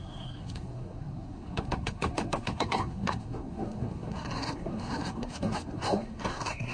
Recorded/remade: remade